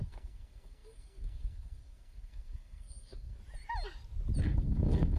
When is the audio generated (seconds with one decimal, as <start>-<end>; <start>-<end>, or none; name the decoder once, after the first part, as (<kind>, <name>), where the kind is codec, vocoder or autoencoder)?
0.0-3.4 (codec, SNAC); 4.4-5.2